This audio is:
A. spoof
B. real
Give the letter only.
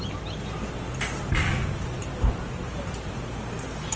B